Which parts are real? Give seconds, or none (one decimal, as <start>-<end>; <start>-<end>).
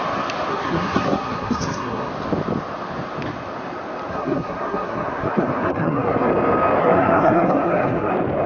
0.0-0.5; 2.1-4.1; 6.3-6.8; 8.1-8.5